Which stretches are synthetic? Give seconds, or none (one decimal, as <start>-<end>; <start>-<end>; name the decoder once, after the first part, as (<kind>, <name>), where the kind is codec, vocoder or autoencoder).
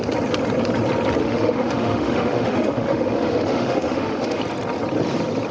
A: 1.2-4.4 (autoencoder, DAC-VAE)